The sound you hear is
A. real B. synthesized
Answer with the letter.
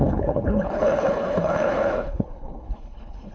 B